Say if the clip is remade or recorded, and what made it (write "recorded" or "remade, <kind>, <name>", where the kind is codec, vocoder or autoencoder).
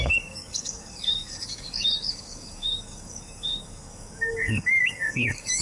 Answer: remade, codec, DAC